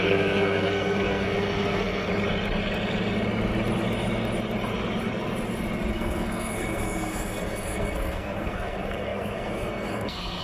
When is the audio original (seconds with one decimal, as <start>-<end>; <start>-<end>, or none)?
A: 2.1-5.9